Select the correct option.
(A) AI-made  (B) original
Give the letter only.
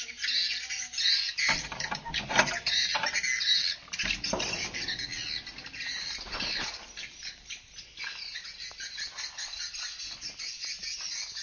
B